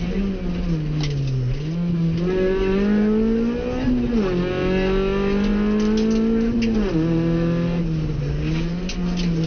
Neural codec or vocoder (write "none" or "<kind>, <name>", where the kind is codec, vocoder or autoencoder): none